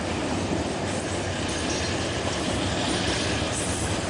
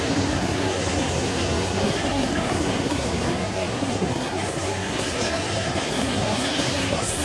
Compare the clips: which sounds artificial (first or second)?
second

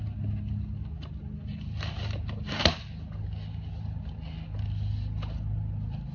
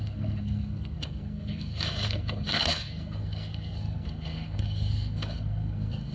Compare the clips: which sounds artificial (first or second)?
second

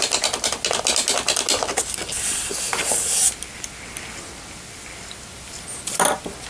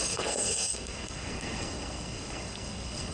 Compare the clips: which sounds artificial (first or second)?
second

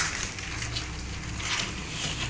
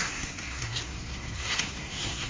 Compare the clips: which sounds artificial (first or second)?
second